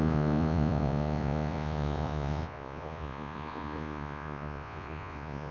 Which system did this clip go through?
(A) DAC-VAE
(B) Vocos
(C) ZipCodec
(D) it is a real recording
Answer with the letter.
B